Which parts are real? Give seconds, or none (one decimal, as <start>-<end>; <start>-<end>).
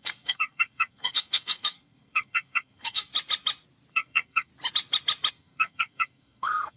3.1-3.9; 4.5-5.3